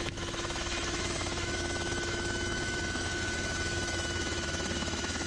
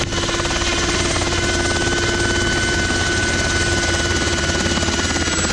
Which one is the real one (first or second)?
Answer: second